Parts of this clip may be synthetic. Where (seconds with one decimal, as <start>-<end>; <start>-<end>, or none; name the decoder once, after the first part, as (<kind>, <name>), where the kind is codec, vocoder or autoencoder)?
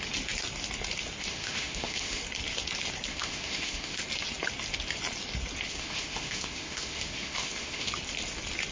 1.2-2.2 (autoencoder, DAC-VAE); 3.1-4.0; 5.7-7.9